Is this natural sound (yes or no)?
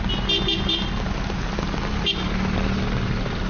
yes